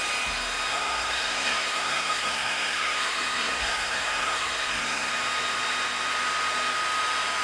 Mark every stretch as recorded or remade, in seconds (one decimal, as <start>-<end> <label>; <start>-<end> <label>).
0.0-0.7 recorded; 0.7-5.1 remade; 5.1-7.4 recorded